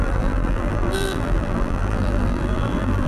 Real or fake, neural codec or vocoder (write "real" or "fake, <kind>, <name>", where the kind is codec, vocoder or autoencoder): fake, vocoder, BigVGAN v2